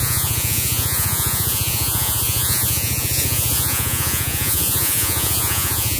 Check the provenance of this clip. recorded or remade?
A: remade